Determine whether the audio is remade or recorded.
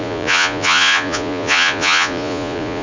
remade